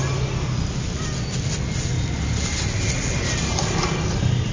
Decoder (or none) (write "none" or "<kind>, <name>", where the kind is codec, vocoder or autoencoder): none